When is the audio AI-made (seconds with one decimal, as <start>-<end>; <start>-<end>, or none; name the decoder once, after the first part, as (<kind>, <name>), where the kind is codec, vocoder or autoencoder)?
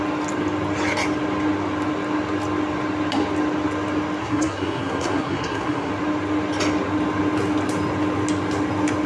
4.2-5.9 (codec, SNAC)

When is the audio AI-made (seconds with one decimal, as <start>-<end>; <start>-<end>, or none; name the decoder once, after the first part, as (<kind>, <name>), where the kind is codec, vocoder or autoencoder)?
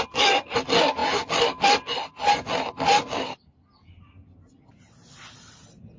none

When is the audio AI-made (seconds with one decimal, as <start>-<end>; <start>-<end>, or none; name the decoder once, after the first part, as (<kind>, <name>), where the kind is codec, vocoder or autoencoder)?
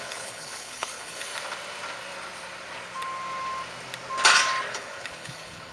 0.0-1.3 (codec, HILCodec); 4.7-5.7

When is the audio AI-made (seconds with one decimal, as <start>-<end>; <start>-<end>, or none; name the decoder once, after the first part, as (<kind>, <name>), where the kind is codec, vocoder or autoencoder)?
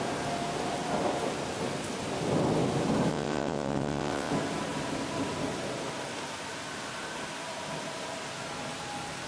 3.1-4.3 (vocoder, WaveNeXt)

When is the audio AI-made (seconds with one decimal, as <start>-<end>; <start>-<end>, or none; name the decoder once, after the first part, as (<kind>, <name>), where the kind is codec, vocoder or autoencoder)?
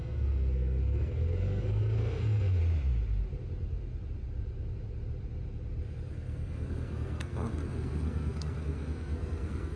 0.0-2.6 (codec, SNAC); 6.1-9.8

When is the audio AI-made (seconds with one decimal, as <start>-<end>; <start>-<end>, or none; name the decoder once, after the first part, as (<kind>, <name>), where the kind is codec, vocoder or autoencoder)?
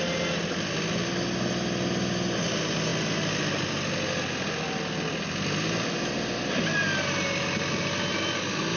none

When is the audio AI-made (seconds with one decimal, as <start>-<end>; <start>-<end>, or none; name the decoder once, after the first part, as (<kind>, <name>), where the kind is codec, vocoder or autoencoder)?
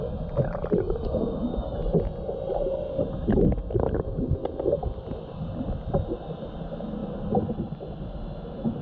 none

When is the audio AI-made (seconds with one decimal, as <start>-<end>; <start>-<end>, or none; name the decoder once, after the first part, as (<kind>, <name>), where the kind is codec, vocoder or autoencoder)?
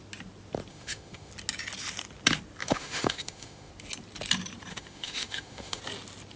0.7-1.3 (autoencoder, DAC-VAE); 2.6-3.7; 4.7-5.8